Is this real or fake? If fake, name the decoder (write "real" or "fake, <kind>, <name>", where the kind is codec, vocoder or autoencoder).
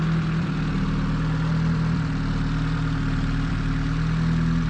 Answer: real